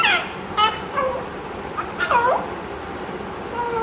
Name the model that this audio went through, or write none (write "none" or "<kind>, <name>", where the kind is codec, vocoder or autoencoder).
none